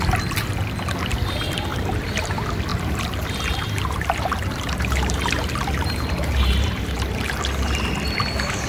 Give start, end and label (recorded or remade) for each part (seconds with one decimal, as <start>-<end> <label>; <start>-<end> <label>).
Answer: 0.0-1.7 recorded; 1.7-2.3 remade; 2.3-2.7 recorded; 2.7-7.4 remade; 7.4-8.7 recorded